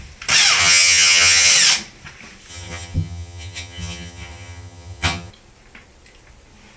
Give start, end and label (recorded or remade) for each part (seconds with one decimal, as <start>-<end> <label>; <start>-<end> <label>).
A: 0.0-0.6 recorded; 0.6-1.5 remade; 1.5-2.5 recorded; 2.5-5.3 remade; 5.3-6.8 recorded